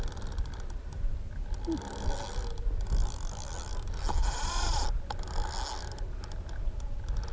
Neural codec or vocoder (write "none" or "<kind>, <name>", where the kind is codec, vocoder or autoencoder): none